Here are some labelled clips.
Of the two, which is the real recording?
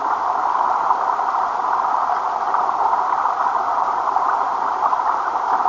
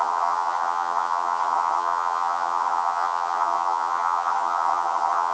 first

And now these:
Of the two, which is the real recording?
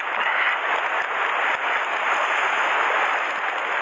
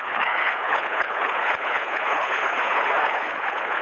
first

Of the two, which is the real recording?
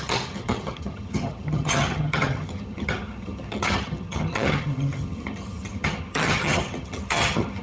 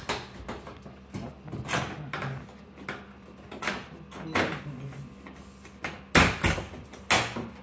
second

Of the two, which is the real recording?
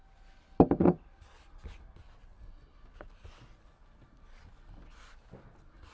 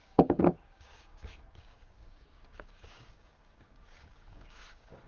first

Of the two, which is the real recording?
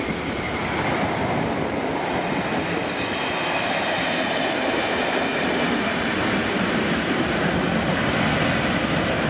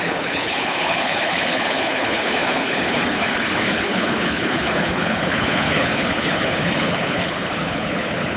first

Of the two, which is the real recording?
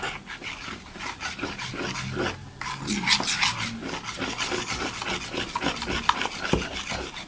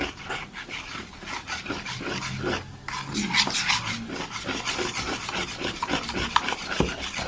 first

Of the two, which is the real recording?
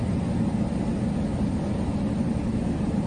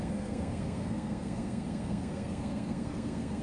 first